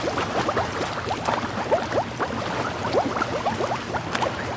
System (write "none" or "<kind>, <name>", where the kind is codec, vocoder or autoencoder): none